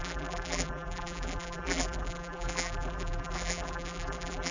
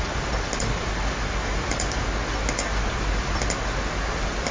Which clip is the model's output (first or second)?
first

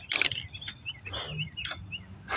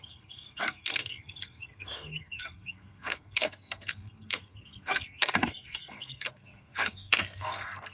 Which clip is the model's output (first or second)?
second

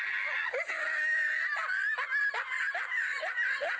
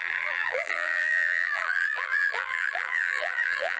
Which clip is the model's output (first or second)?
second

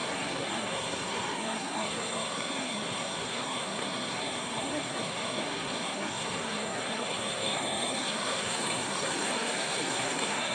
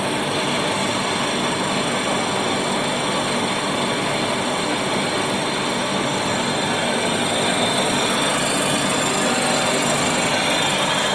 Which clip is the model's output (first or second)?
first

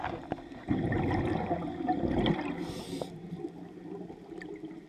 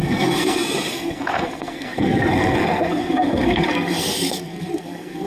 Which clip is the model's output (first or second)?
second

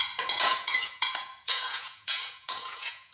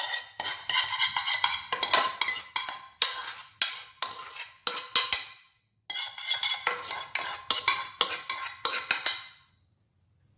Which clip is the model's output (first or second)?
first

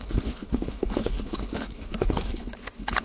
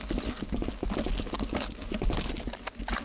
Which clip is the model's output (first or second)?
first